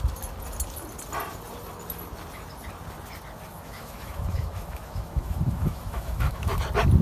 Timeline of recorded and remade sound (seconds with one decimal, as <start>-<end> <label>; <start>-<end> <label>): 0.0-3.5 recorded; 3.5-6.5 remade; 6.5-7.0 recorded